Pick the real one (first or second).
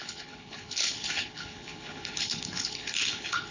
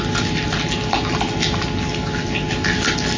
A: second